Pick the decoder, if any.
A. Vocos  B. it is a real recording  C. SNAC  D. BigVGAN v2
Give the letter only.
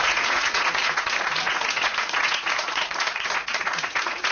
A